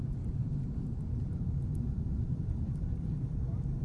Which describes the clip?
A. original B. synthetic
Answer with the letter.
B